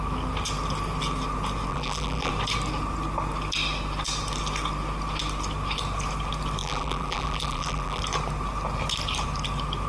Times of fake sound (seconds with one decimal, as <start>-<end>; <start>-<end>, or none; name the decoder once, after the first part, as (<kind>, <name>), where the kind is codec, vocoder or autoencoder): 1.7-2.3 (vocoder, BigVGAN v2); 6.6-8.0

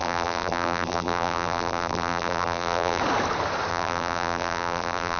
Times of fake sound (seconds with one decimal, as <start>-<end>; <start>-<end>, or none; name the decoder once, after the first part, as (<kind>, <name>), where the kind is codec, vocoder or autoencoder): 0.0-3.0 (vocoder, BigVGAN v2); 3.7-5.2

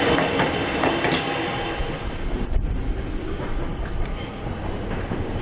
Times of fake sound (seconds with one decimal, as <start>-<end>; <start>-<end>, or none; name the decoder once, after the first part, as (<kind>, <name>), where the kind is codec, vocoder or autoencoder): none

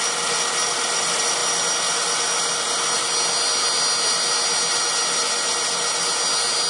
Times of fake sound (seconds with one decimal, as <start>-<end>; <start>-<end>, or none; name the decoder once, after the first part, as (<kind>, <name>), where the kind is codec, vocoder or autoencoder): none

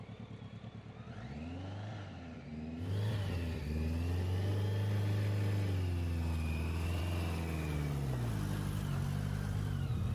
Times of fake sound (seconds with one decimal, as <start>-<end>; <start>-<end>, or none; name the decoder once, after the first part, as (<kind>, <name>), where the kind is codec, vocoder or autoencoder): none